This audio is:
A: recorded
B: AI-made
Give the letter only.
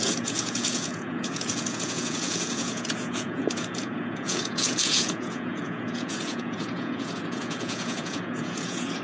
B